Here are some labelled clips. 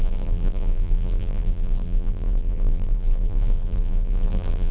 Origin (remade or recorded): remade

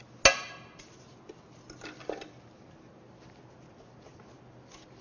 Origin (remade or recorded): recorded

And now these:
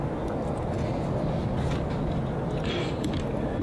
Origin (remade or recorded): recorded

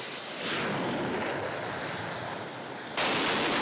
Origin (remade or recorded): recorded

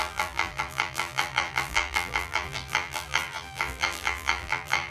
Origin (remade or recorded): remade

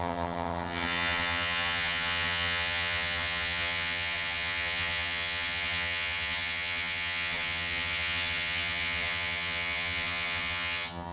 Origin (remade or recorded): remade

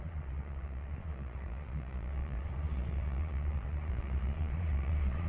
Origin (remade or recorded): remade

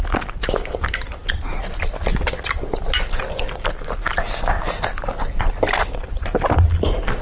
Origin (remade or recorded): recorded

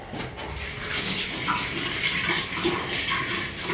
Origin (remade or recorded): recorded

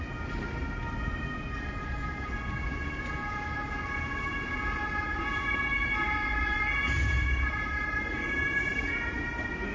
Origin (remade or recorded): recorded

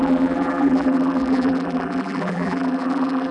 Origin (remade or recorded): remade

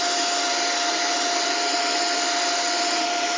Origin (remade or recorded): recorded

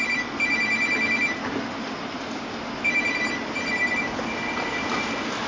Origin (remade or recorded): recorded